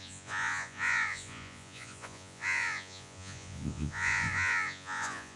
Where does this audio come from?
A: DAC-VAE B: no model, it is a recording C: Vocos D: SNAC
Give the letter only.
C